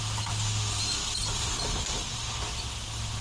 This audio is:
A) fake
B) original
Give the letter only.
B